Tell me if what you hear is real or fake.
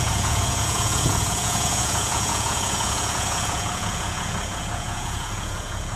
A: fake